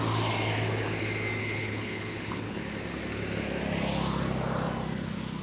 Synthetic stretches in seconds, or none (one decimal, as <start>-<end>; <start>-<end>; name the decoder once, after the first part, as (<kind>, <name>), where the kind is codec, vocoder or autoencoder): 1.4-2.6 (codec, HILCodec)